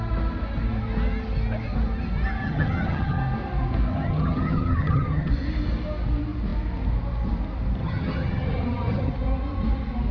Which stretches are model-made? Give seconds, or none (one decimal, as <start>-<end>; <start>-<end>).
2.4-3.2; 3.9-5.3; 7.8-9.1